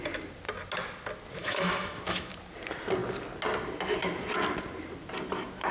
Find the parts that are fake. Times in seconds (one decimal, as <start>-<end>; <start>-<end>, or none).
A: 1.4-2.3